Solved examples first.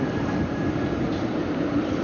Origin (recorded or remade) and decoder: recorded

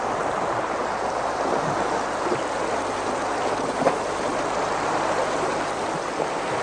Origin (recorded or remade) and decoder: recorded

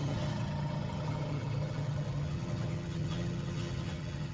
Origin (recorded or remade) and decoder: remade, vocoder, HiFi-GAN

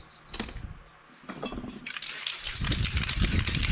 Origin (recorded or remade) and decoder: recorded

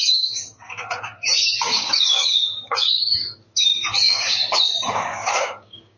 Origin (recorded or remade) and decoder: remade, codec, DAC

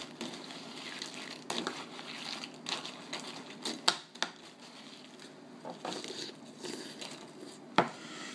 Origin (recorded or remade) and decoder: recorded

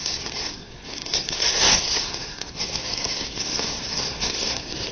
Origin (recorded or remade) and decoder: remade, codec, SNAC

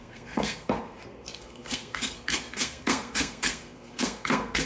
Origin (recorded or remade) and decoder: remade, codec, SNAC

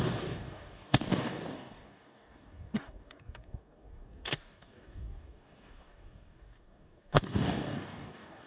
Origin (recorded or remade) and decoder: remade, codec, DAC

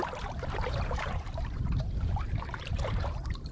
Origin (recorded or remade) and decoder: remade, vocoder, BigVGAN v2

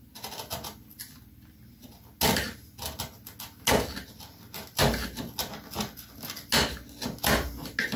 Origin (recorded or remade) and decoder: recorded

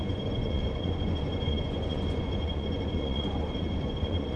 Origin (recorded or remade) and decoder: remade, vocoder, Vocos